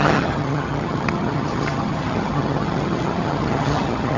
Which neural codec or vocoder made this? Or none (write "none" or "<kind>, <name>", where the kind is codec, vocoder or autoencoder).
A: vocoder, HiFi-GAN